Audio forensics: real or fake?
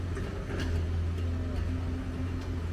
real